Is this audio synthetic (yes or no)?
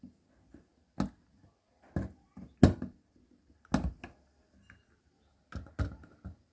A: no